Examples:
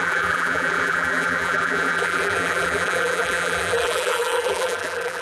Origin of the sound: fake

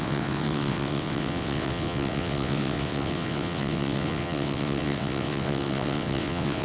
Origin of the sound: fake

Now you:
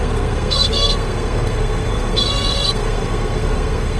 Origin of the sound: fake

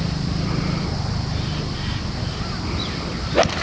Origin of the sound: real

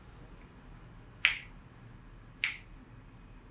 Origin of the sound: real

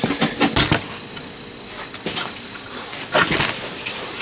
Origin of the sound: real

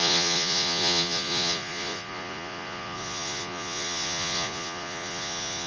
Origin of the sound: fake